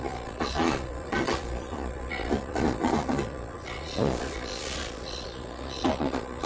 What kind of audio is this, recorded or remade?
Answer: remade